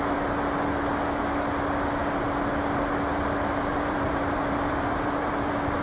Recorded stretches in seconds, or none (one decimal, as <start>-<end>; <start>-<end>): 0.0-3.7; 5.3-5.8